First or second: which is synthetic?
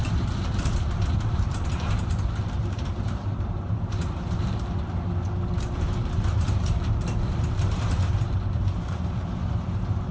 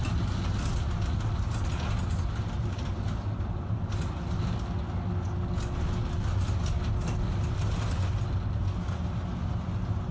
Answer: first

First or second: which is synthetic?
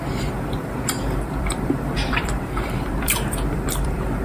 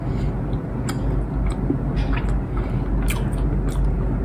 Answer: first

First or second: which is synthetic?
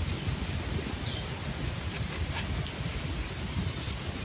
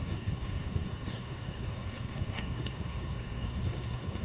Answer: second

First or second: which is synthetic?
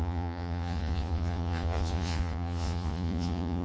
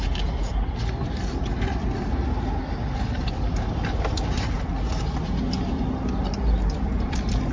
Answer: first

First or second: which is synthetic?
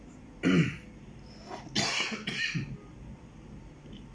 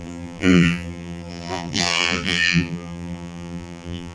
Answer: second